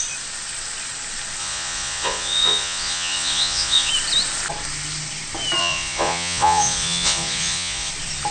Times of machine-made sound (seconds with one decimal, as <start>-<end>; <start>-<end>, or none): 1.4-3.9; 5.6-7.9